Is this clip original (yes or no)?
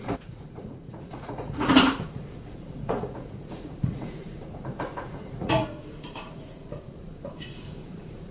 no